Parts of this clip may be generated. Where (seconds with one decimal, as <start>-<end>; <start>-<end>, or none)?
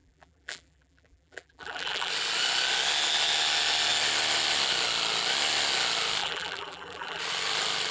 0.0-2.1; 6.2-7.2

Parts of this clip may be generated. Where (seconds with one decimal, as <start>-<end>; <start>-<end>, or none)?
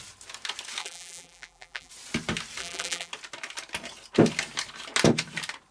0.8-1.9; 2.6-3.1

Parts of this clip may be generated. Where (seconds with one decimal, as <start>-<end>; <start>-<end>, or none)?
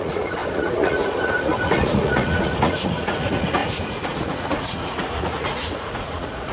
0.0-6.5